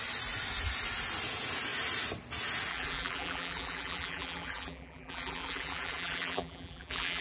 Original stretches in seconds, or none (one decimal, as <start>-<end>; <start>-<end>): 0.0-2.7